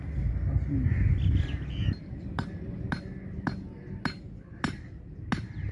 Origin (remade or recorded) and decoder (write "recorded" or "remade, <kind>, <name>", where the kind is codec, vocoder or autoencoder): recorded